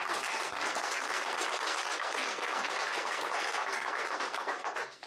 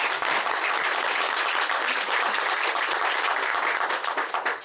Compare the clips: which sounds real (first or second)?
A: second